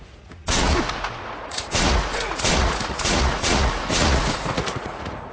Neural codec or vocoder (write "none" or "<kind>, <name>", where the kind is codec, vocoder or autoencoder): vocoder, Vocos